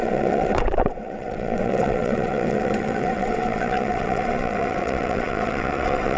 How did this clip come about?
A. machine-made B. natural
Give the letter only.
A